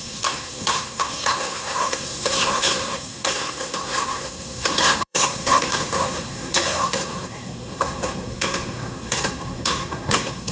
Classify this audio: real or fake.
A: fake